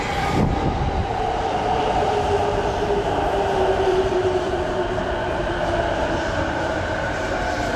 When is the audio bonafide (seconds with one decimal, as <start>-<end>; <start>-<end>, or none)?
0.0-1.0; 4.9-7.8